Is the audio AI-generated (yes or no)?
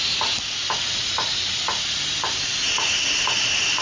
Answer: no